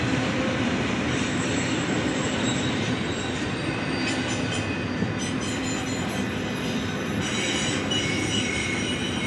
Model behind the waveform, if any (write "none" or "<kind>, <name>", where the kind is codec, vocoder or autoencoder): none